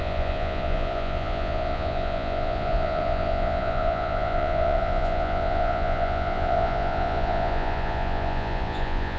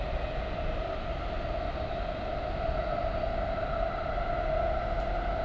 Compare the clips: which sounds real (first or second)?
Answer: second